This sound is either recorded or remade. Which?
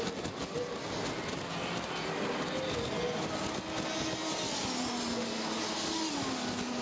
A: recorded